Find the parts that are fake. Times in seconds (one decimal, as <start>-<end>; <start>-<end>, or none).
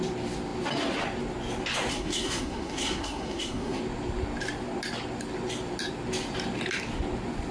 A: 1.9-3.8